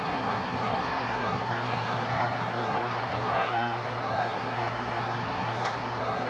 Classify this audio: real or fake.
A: fake